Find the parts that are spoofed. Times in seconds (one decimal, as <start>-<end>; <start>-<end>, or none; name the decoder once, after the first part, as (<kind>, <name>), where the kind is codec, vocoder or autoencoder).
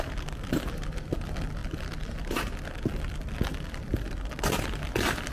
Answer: none